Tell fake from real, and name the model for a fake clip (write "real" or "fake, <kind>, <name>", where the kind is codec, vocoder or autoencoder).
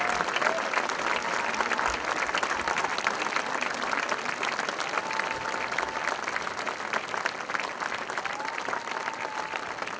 real